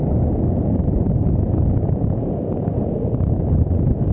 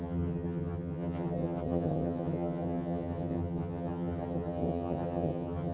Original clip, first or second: first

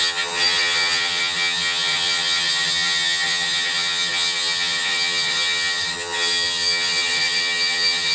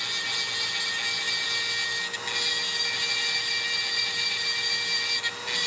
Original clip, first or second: second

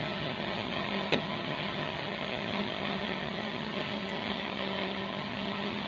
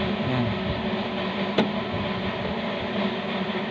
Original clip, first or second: second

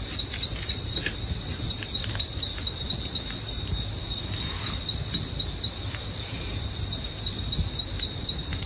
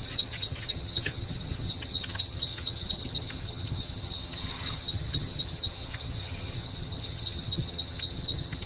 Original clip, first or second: first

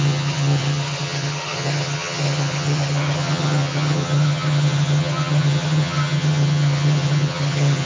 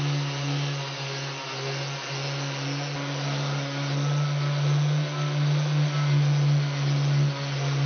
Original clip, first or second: second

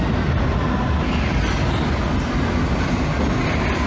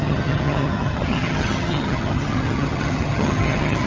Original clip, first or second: first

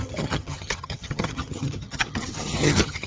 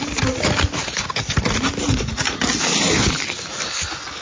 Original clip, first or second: second